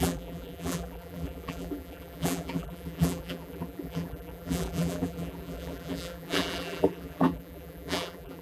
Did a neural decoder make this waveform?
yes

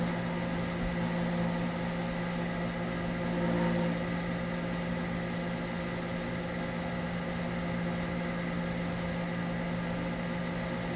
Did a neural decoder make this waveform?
no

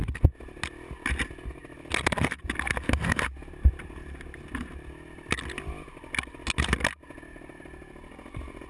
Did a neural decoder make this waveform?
no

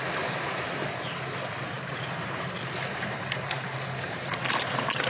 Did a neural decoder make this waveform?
no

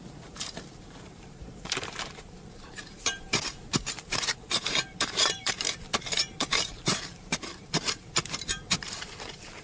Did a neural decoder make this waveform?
yes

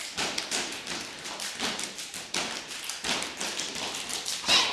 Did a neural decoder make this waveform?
no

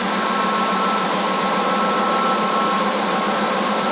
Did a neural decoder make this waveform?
yes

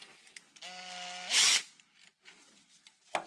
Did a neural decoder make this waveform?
no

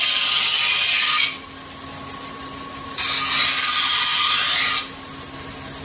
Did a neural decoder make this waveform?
no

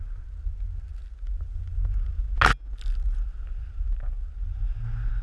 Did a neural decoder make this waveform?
no